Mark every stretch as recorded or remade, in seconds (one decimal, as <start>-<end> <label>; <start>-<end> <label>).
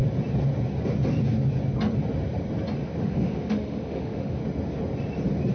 0.0-3.0 recorded; 3.0-4.4 remade; 4.4-5.5 recorded